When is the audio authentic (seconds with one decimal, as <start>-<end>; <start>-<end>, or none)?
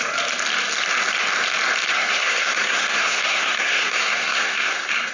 0.0-1.9